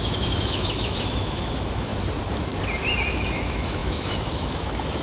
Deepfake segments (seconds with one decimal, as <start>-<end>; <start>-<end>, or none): 0.0-1.9; 3.1-5.0